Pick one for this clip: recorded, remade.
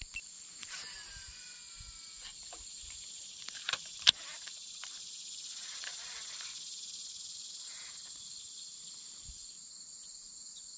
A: remade